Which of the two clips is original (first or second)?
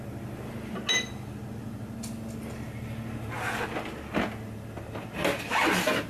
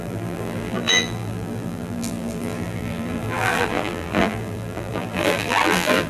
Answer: first